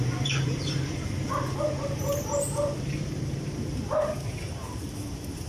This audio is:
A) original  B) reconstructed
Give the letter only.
B